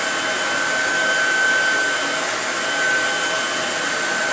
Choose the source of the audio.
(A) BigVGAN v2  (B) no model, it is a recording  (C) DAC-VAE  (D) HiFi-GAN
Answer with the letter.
B